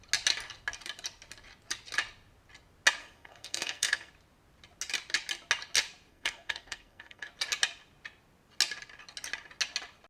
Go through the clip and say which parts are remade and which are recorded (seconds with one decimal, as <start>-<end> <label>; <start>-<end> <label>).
0.0-3.0 recorded; 3.0-4.1 remade; 4.1-6.1 recorded; 6.1-7.3 remade; 7.3-10.1 recorded